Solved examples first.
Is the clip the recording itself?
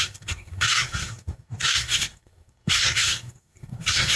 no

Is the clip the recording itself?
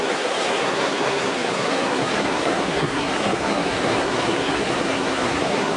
no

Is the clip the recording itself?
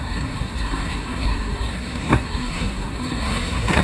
no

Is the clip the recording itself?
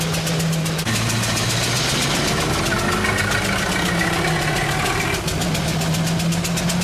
yes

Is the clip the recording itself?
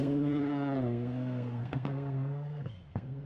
no